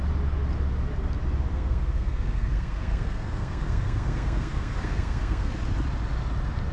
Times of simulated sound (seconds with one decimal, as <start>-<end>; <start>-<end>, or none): 1.5-5.5